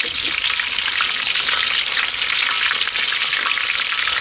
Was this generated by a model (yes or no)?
no